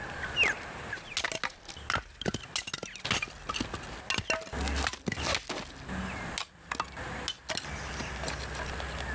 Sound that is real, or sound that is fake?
real